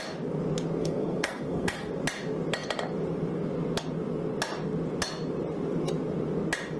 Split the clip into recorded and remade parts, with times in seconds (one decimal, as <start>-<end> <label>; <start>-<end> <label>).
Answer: 0.0-0.8 recorded; 0.8-1.9 remade; 1.9-6.8 recorded

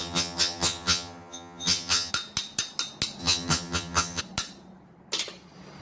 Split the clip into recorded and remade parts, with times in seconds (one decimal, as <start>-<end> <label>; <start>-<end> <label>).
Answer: 0.0-2.1 remade; 2.1-3.2 recorded; 3.2-4.2 remade; 4.2-5.8 recorded

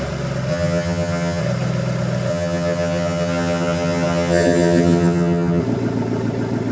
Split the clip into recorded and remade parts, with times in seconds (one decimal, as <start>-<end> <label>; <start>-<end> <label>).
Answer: 0.0-0.5 recorded; 0.5-1.4 remade; 1.4-2.3 recorded; 2.3-5.6 remade; 5.6-6.7 recorded

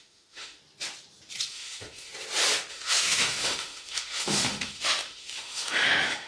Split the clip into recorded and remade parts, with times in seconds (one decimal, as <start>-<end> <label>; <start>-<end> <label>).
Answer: 0.0-0.6 remade; 0.6-1.5 recorded; 1.5-2.1 remade; 2.1-2.7 recorded; 2.7-6.3 remade

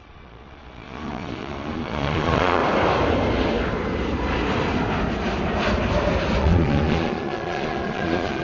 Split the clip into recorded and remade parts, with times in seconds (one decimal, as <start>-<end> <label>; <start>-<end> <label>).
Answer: 0.0-2.6 remade; 2.6-6.4 recorded; 6.4-8.4 remade

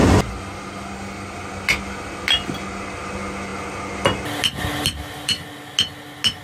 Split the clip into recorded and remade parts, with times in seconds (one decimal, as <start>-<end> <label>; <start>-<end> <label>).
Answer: 0.0-6.4 recorded

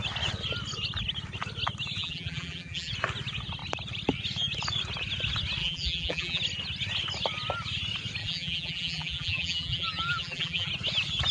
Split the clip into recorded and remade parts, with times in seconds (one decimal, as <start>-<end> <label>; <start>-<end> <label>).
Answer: 0.0-2.0 recorded; 2.0-2.9 remade; 2.9-5.6 recorded; 5.6-6.4 remade; 6.4-8.2 recorded; 8.2-10.7 remade; 10.7-11.3 recorded

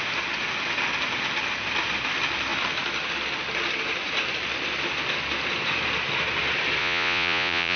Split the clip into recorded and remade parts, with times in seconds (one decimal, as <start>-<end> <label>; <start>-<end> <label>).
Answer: 0.0-6.8 recorded; 6.8-7.8 remade